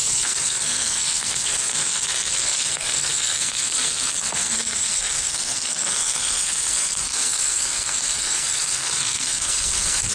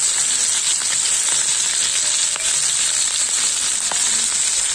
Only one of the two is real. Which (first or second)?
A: second